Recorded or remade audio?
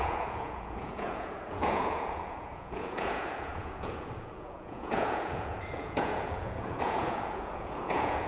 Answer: remade